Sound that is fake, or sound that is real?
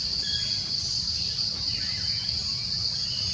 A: real